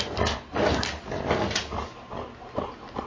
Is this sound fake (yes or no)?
no